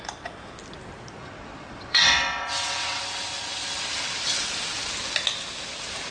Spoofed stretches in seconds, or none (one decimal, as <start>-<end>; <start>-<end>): 1.2-3.0